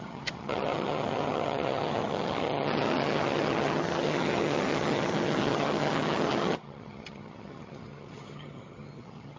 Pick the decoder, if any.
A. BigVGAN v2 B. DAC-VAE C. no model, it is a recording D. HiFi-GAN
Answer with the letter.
D